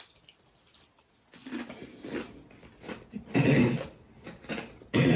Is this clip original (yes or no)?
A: yes